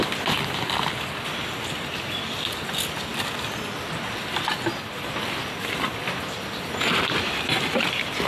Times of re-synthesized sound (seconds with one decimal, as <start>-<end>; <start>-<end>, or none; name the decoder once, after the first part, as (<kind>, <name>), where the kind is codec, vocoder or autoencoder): none